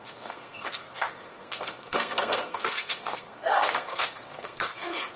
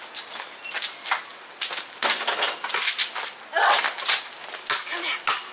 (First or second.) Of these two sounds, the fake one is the first